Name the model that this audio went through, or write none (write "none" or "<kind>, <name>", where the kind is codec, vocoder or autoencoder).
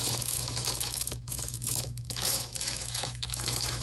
autoencoder, DAC-VAE